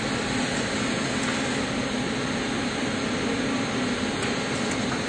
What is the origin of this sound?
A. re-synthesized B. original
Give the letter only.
B